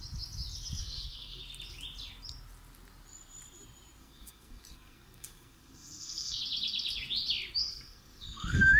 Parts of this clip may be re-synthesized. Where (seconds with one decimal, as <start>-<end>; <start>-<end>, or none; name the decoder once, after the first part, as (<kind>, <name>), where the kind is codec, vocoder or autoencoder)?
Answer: 0.8-1.4 (codec, SNAC); 4.0-6.4; 7.6-8.8